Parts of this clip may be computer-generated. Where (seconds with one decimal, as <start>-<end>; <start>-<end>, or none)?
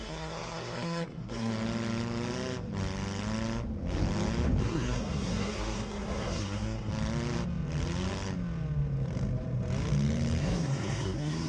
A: 0.0-1.5; 4.6-6.9; 10.4-11.5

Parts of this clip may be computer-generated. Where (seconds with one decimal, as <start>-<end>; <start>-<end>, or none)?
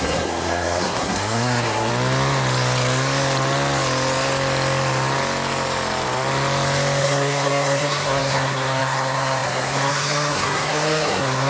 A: 0.0-1.9; 7.0-11.5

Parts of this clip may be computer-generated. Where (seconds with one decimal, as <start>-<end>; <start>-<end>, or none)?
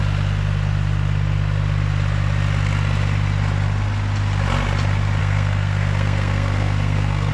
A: 5.2-7.3